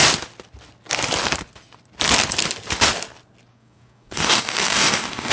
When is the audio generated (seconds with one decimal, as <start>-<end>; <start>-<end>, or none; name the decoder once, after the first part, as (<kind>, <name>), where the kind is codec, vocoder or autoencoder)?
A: 3.5-5.3 (codec, DAC)